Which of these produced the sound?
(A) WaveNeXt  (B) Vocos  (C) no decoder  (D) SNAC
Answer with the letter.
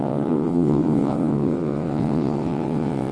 A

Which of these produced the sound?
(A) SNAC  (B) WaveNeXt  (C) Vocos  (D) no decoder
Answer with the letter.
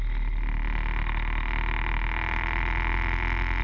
D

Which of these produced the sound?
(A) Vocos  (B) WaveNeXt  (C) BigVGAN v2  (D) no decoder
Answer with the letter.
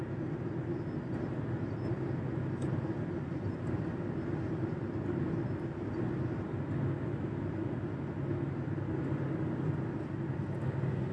D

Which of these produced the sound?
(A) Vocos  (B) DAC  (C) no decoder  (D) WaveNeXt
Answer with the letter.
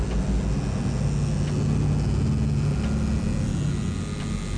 C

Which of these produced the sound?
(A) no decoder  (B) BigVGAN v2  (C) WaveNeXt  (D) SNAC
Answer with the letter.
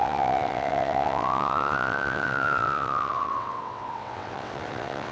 C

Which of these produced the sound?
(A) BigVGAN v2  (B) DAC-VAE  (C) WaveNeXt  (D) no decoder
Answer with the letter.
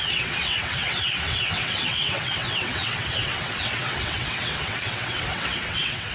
C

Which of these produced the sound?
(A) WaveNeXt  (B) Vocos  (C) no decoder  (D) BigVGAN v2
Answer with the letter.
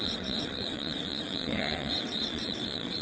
A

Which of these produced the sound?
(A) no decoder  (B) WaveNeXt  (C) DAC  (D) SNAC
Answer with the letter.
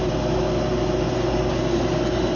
A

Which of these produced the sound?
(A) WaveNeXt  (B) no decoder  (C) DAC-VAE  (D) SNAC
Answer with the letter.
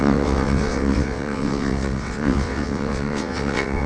A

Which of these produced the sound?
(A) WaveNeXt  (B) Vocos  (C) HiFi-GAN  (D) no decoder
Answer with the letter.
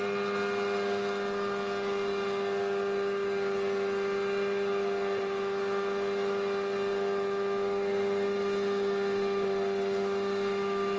D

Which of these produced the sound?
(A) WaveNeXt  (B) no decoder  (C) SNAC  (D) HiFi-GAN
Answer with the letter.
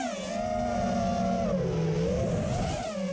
B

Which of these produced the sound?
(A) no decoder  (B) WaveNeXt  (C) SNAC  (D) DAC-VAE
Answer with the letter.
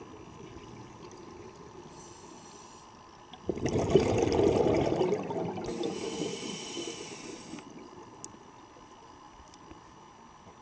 A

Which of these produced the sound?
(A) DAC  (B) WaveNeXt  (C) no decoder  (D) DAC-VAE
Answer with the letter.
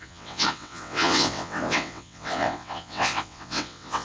B